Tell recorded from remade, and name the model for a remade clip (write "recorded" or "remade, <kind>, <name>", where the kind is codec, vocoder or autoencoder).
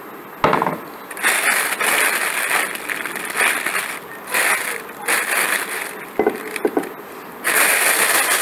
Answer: recorded